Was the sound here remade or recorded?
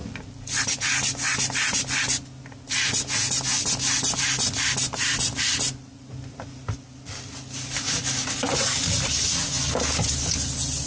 recorded